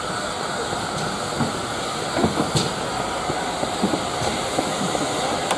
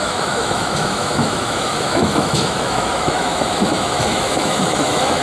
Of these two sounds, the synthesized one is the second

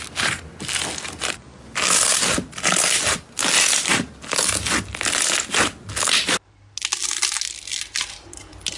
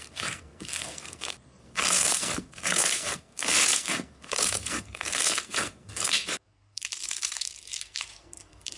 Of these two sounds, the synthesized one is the second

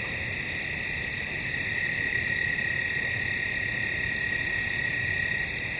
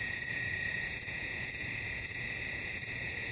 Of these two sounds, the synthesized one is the second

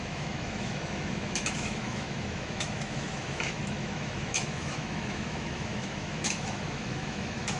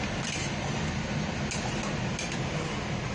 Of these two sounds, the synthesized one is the first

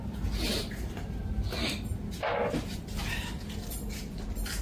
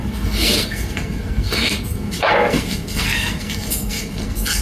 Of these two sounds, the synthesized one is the second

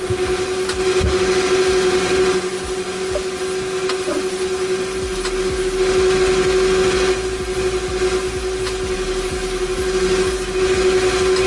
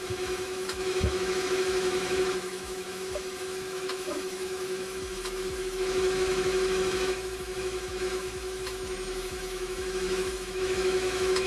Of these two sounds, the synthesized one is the second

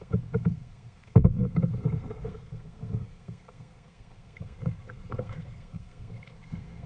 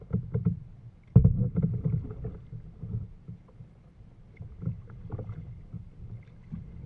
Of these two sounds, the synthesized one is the first